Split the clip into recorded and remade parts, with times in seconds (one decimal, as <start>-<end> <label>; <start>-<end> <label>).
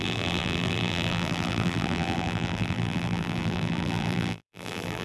0.0-5.0 remade